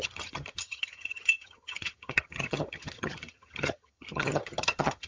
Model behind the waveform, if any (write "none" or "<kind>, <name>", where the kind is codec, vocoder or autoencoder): vocoder, HiFi-GAN